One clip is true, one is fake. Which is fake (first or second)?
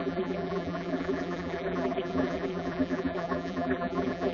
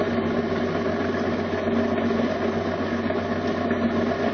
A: first